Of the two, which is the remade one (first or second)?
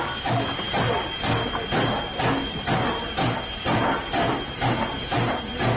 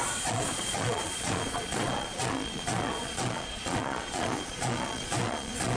second